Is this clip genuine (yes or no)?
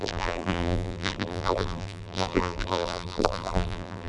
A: no